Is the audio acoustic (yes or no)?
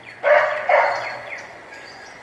no